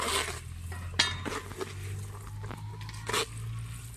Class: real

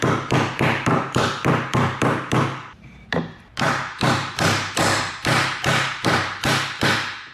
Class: fake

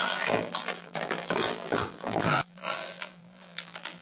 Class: fake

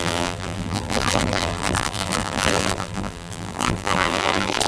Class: fake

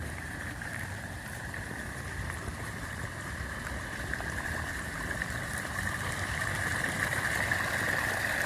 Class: fake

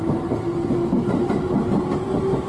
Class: real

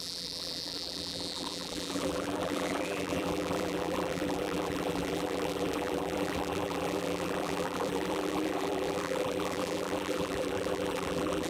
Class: fake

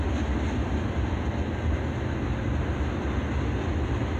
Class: real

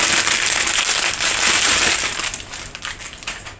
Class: real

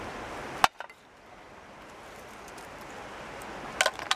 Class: real